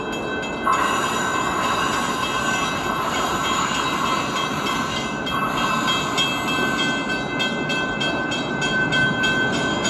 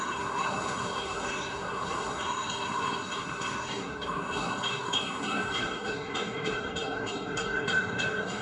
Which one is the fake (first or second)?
second